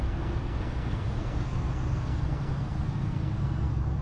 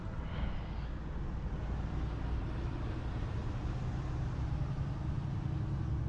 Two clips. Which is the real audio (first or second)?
second